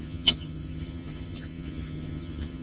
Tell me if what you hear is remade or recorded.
remade